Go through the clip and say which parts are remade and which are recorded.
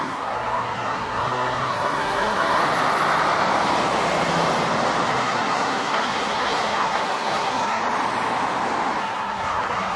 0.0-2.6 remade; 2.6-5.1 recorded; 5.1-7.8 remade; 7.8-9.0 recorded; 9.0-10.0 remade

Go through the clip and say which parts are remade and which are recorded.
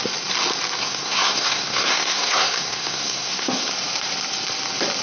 0.0-0.8 recorded; 0.8-3.7 remade; 3.7-5.0 recorded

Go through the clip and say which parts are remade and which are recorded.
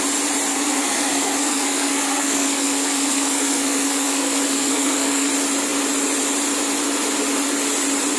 0.0-0.5 recorded; 0.5-5.3 remade; 5.3-8.2 recorded